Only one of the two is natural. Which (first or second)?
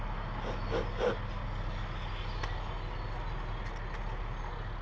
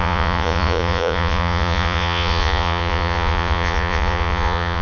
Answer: first